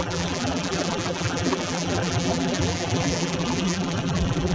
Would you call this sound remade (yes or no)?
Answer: yes